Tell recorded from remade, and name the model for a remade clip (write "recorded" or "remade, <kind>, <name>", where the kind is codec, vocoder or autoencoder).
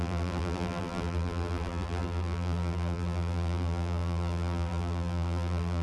remade, vocoder, BigVGAN v2